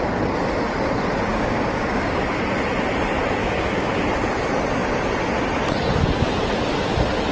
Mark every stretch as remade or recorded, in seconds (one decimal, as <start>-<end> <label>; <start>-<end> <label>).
0.0-1.3 recorded; 1.3-2.2 remade; 2.2-3.4 recorded; 3.4-4.0 remade; 4.0-7.3 recorded